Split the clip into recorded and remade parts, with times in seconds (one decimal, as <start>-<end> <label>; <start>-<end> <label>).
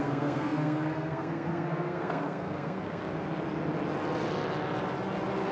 0.0-3.0 remade; 3.0-5.5 recorded